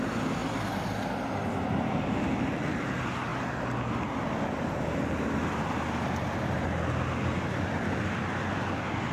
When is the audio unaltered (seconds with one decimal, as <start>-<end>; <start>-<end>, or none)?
0.0-9.1

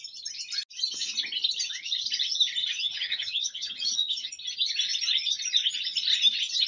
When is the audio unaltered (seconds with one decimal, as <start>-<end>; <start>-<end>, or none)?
0.0-2.6; 4.3-6.7